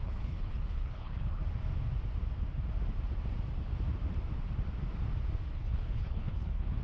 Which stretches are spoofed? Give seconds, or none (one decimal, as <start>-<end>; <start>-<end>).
0.0-1.4; 5.5-6.8

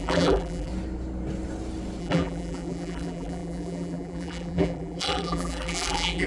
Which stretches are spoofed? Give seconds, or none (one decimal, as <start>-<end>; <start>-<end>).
0.0-0.7; 2.0-6.3

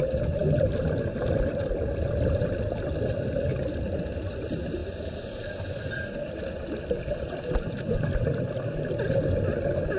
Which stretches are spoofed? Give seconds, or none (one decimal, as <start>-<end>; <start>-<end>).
none

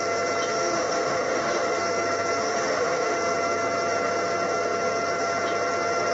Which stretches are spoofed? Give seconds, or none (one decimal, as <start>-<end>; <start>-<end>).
0.5-1.8; 2.4-3.2